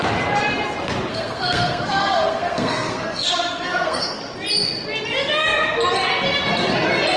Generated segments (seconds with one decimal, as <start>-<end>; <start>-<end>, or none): 1.1-4.2

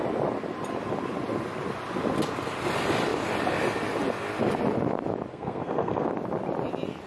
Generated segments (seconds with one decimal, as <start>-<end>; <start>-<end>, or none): 5.3-6.1

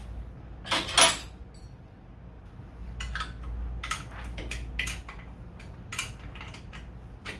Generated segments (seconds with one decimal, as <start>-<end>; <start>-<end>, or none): none

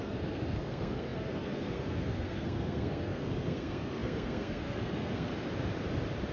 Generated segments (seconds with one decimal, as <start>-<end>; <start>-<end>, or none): 0.0-5.3